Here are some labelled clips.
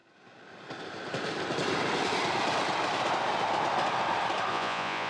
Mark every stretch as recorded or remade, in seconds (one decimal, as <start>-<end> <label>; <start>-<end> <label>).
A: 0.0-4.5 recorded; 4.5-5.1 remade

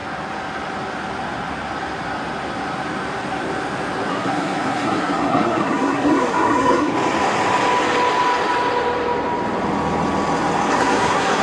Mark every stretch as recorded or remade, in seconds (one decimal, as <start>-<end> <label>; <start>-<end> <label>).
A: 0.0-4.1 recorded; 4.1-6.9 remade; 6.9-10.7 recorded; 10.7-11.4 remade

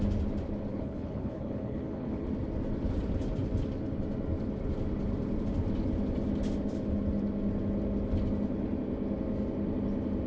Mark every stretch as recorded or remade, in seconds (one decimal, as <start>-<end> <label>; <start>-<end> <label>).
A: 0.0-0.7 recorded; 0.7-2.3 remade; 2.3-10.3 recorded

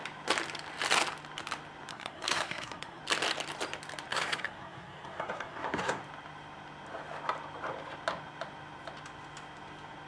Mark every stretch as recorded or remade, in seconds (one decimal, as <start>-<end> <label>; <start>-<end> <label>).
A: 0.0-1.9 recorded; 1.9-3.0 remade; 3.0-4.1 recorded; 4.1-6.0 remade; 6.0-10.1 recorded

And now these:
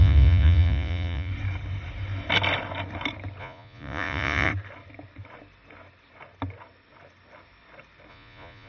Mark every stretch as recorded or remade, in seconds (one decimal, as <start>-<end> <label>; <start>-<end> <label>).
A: 0.0-1.3 remade; 1.3-3.4 recorded; 3.4-4.5 remade; 4.5-8.1 recorded; 8.1-8.7 remade